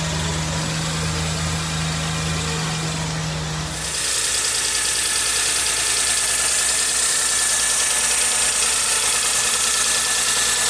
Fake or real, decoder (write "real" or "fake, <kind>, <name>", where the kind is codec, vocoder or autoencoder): real